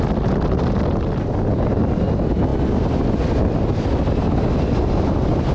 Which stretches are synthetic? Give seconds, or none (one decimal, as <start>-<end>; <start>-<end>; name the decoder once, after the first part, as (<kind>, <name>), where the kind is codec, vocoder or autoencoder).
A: none